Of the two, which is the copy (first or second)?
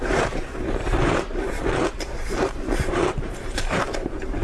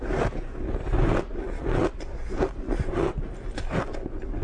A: first